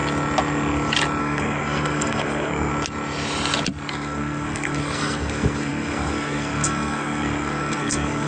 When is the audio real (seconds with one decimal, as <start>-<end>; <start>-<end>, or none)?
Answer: 0.0-1.2; 2.7-3.9